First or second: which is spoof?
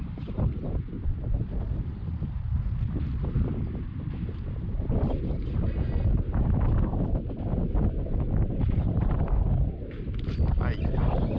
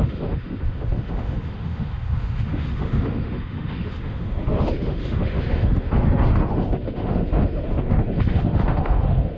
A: second